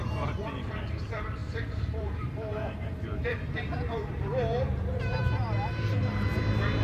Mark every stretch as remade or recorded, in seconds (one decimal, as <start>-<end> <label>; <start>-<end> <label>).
0.0-6.8 remade

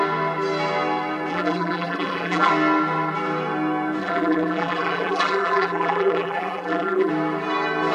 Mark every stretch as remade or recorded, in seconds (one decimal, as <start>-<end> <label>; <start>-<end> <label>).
0.0-1.3 recorded; 1.3-2.5 remade; 2.5-4.0 recorded; 4.0-7.1 remade; 7.1-7.9 recorded

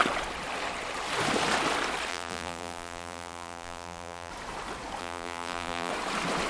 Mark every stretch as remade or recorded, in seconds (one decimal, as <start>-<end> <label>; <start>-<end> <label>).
0.0-2.1 recorded; 2.1-4.3 remade; 4.3-5.0 recorded; 5.0-5.9 remade; 5.9-6.5 recorded

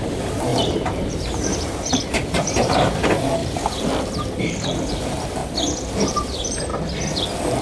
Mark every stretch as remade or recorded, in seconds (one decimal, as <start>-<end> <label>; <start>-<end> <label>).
0.0-3.4 remade; 3.4-4.4 recorded; 4.4-5.4 remade; 5.4-5.9 recorded; 5.9-6.7 remade; 6.7-7.6 recorded

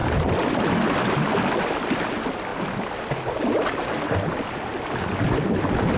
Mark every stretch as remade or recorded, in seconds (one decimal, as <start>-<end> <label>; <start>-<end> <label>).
0.0-1.9 remade; 1.9-6.0 recorded

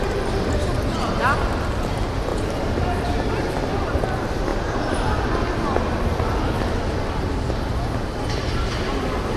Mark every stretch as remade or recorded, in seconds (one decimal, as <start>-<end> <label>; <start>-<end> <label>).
0.0-2.3 recorded; 2.3-4.0 remade; 4.0-9.4 recorded

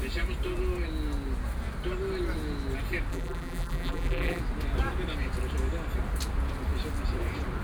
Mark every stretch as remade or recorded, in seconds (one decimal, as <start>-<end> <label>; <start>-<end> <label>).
0.0-3.1 recorded; 3.1-4.4 remade; 4.4-7.6 recorded